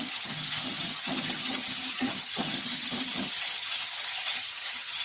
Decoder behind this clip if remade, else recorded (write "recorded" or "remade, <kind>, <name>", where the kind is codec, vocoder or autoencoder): remade, vocoder, HiFi-GAN